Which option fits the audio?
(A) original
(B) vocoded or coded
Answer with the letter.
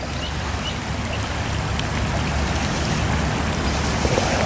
A